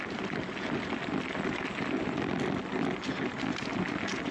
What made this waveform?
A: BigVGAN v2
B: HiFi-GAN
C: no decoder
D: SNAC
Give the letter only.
C